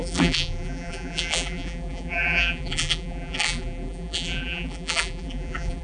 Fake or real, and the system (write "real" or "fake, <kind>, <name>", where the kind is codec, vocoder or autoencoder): fake, vocoder, BigVGAN v2